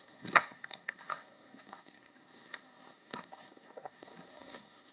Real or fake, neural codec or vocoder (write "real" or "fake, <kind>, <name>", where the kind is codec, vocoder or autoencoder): fake, codec, SNAC